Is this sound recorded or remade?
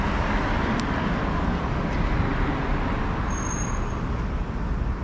recorded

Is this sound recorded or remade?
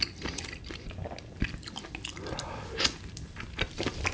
recorded